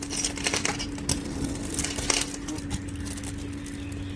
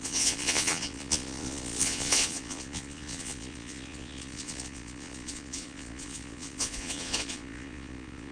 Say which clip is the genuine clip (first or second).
first